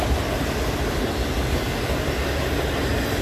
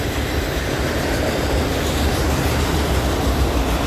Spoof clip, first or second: second